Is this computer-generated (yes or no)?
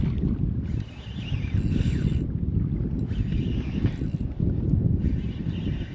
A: no